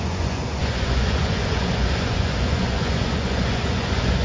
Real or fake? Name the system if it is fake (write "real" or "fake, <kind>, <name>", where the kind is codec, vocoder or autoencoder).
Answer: fake, vocoder, Vocos